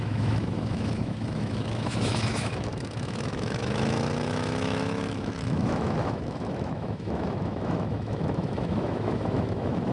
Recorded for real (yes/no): no